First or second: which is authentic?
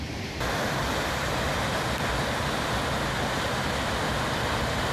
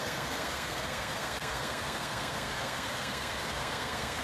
first